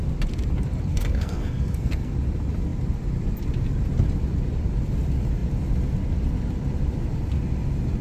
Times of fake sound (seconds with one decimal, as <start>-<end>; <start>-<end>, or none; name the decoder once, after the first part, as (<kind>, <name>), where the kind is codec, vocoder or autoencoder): 0.9-2.1 (codec, SNAC)